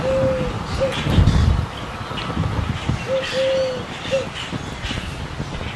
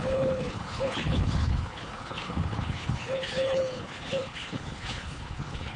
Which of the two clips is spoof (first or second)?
second